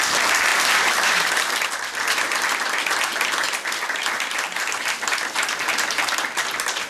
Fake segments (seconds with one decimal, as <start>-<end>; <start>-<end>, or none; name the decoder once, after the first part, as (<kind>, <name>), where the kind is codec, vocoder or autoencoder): 0.5-1.3 (vocoder, BigVGAN v2)